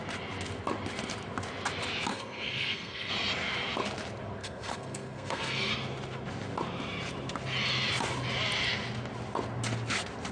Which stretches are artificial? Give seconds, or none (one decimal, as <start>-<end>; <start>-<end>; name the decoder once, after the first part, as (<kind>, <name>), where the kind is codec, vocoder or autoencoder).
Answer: 2.1-3.1 (codec, SNAC); 4.4-5.7